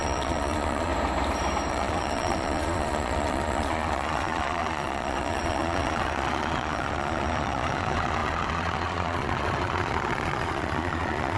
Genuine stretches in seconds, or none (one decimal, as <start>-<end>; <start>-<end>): 0.9-1.7